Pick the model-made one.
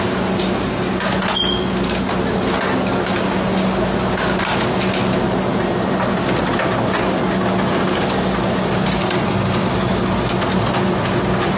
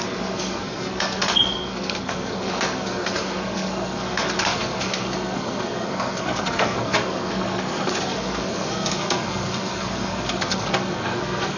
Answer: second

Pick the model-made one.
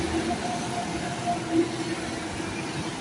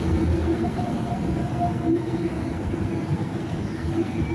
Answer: second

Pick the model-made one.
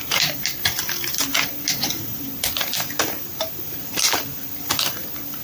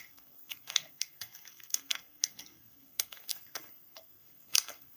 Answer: second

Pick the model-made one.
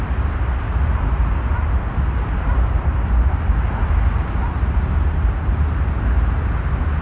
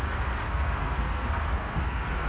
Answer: second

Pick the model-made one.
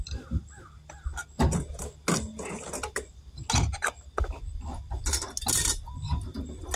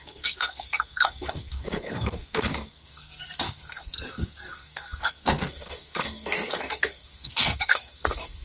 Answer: second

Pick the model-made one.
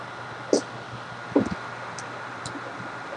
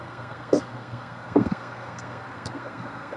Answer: second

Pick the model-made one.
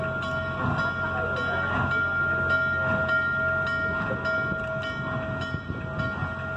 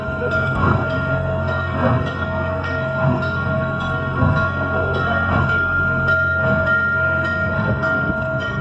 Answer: second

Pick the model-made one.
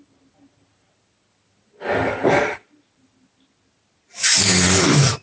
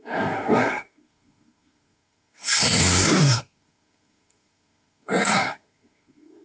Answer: second